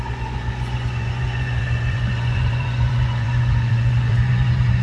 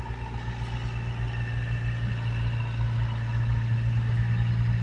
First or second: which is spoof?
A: first